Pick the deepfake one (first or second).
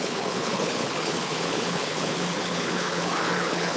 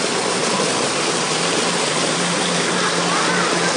first